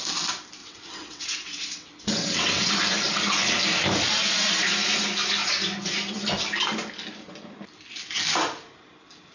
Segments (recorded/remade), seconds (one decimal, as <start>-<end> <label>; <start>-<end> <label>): 0.0-0.6 recorded; 0.6-2.7 remade; 2.7-9.3 recorded